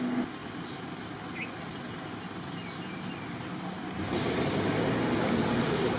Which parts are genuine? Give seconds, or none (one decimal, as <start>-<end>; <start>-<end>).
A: 0.0-6.0